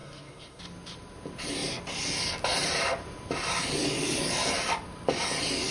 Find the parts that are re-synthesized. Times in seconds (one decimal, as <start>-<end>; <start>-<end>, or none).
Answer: 0.0-0.6